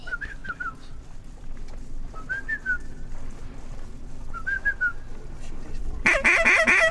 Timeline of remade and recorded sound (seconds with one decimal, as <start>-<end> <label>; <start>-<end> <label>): 0.0-6.9 recorded